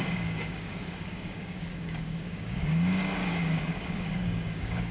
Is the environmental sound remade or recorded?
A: remade